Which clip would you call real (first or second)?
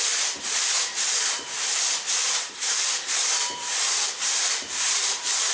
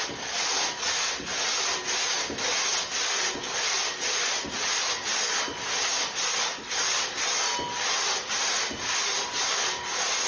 second